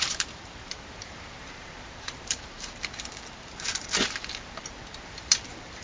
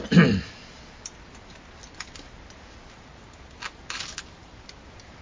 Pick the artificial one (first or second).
first